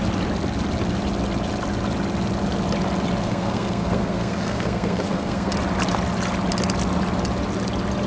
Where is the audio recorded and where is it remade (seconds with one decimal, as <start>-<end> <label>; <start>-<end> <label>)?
0.0-3.2 recorded; 3.2-5.5 remade; 5.5-8.1 recorded